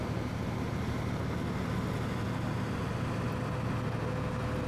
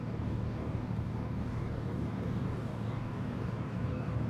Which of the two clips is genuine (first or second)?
first